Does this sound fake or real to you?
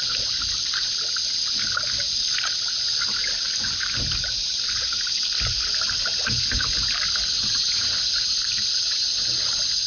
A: real